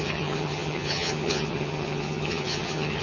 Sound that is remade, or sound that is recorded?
remade